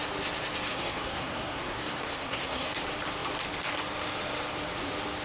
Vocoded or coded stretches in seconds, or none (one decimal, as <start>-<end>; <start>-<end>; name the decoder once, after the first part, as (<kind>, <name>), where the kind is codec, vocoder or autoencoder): 0.7-2.7 (codec, SNAC)